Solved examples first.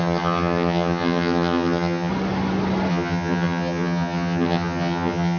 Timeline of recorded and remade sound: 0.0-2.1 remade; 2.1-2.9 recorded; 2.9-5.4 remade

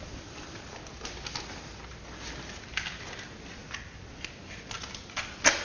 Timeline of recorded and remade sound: 0.0-5.6 recorded

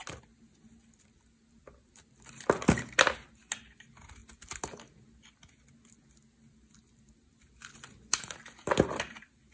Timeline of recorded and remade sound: 0.0-9.5 recorded

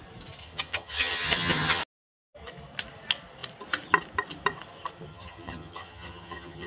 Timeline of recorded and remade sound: 0.0-0.4 recorded; 0.4-1.8 remade; 1.8-5.1 recorded; 5.1-6.7 remade

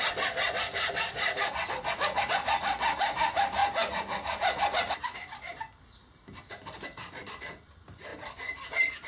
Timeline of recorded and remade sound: 0.0-9.1 recorded